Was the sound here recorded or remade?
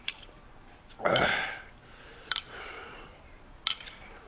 remade